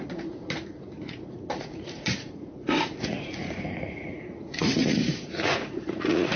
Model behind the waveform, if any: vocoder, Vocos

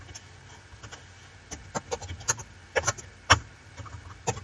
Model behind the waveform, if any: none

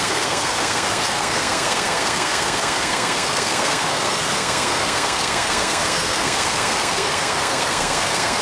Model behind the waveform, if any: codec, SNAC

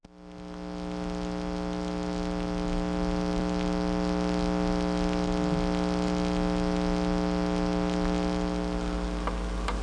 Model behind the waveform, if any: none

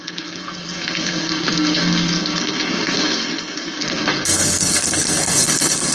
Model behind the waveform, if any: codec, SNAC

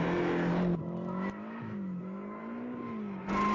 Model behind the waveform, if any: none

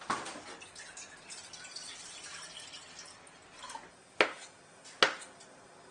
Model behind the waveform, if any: none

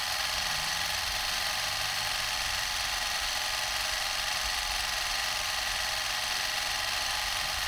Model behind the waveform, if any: none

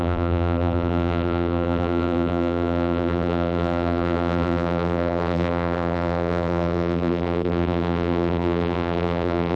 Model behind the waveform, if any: vocoder, BigVGAN v2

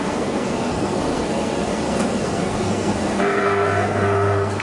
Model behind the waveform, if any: codec, SNAC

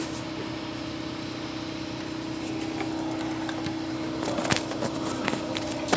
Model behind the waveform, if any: none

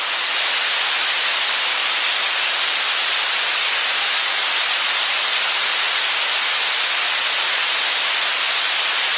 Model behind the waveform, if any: none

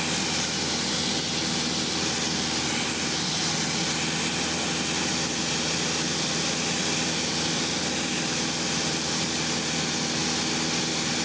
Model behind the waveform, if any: none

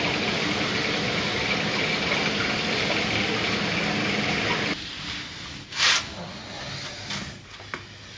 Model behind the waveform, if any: none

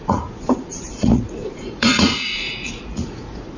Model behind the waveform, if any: vocoder, Vocos